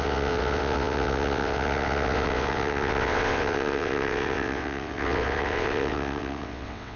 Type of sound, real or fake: fake